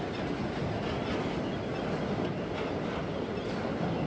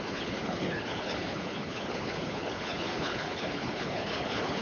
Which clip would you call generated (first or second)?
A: second